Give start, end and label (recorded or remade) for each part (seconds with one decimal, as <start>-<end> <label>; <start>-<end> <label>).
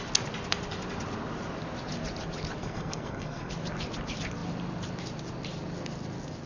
0.0-2.6 recorded; 2.6-3.5 remade; 3.5-6.5 recorded